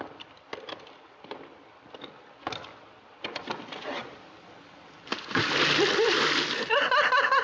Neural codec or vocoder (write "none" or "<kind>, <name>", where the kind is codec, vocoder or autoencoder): vocoder, BigVGAN v2